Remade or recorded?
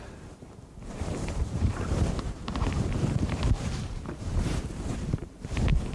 remade